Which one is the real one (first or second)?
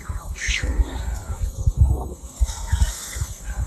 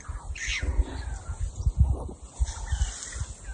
second